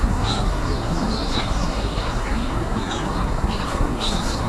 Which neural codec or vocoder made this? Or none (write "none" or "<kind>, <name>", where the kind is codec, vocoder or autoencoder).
codec, SNAC